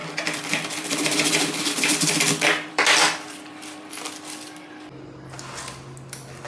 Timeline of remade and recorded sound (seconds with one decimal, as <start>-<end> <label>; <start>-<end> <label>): 0.0-3.9 remade; 3.9-6.5 recorded